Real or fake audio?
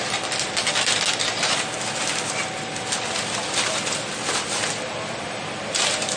real